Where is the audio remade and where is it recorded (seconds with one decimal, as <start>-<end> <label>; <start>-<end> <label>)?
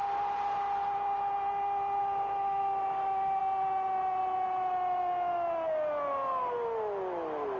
0.0-2.0 recorded; 2.0-3.4 remade; 3.4-7.6 recorded